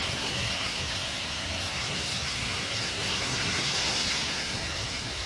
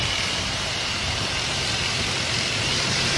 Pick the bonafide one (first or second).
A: second